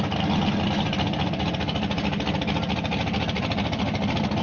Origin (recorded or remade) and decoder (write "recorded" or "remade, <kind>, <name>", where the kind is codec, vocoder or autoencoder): recorded